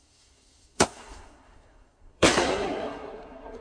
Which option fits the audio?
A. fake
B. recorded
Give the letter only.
A